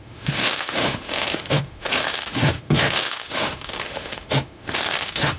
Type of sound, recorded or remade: remade